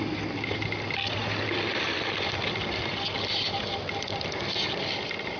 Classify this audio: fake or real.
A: real